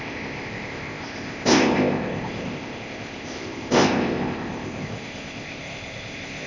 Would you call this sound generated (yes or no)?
yes